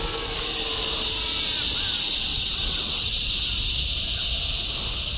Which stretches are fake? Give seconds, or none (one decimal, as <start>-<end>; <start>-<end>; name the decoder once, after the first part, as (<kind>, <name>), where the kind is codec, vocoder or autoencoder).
2.3-3.2 (vocoder, WaveNeXt)